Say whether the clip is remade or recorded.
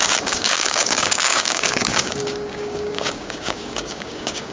remade